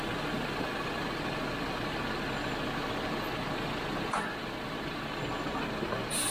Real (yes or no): yes